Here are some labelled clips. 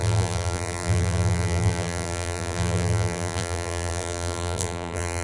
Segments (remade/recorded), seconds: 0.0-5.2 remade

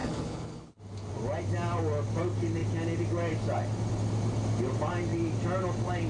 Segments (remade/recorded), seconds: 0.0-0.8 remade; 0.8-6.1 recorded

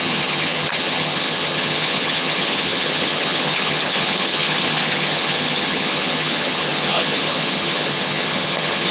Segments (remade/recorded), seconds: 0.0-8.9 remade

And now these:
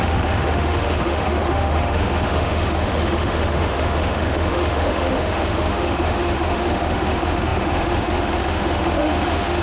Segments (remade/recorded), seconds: 0.0-9.6 remade

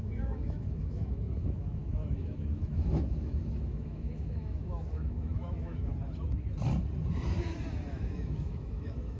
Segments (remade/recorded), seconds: 0.0-5.9 remade; 5.9-7.9 recorded; 7.9-9.2 remade

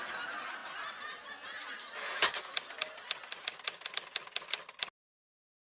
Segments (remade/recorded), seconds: 0.0-5.8 recorded